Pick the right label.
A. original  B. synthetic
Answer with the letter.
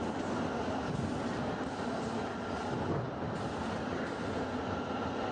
A